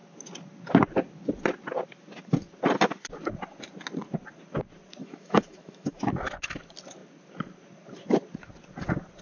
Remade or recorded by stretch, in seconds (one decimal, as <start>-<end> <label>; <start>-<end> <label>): 0.0-5.0 recorded; 5.0-6.0 remade; 6.0-9.2 recorded